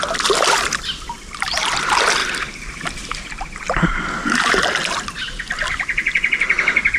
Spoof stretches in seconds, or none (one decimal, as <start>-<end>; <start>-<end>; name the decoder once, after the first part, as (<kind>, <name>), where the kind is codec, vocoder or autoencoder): none